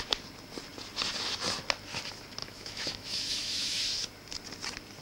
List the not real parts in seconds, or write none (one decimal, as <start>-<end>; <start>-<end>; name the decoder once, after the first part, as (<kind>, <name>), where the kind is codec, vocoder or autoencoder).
2.4-3.8 (autoencoder, DAC-VAE)